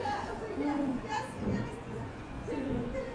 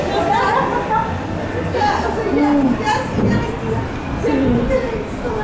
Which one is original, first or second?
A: second